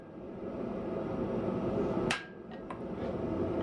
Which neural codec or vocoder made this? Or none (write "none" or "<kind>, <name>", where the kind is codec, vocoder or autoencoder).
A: vocoder, BigVGAN v2